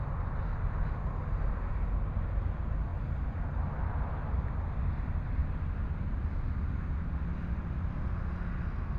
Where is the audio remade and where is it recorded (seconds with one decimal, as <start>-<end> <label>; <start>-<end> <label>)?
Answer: 0.0-9.0 recorded